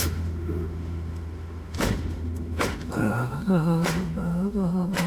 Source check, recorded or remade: remade